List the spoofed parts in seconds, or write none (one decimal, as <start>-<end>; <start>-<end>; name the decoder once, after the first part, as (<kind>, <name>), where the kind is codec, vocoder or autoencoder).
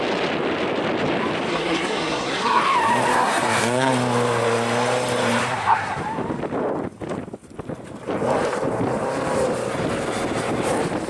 1.5-2.6 (codec, SNAC); 3.1-3.9; 5.4-6.0